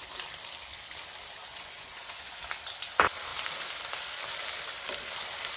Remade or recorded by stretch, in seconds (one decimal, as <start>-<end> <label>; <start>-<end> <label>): 0.0-1.4 recorded; 1.4-2.4 remade; 2.4-5.6 recorded